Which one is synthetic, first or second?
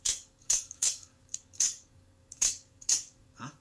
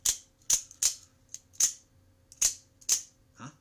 first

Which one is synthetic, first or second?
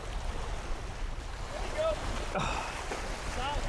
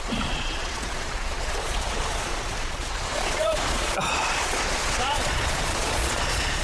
second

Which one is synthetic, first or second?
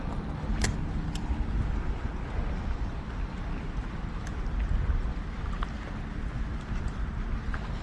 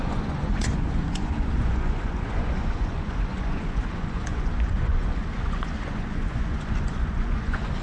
second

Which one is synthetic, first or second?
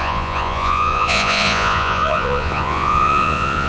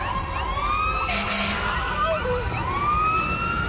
first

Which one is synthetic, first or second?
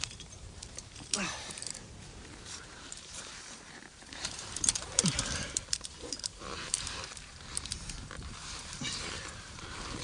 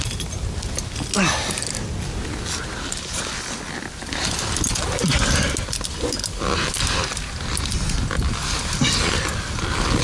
first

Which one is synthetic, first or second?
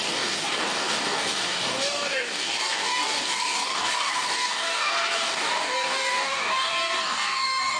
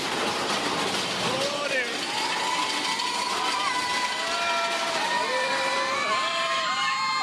first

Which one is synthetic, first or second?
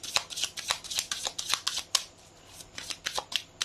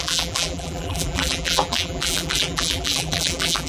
second